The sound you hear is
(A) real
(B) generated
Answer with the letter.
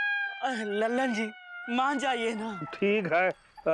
A